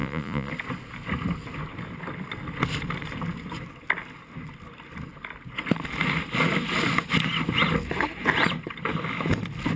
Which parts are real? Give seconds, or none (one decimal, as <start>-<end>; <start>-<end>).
0.5-9.8